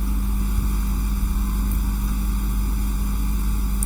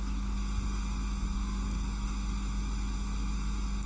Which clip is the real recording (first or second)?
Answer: first